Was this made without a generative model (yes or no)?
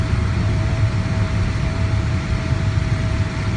no